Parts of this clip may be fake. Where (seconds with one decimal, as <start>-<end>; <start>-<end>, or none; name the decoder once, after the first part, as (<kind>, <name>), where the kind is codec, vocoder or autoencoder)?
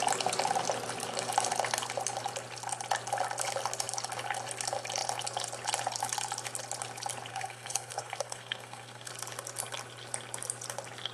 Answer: 7.3-9.1 (codec, SNAC)